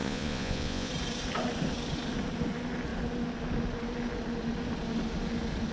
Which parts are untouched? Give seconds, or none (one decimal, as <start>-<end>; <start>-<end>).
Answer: 0.9-5.7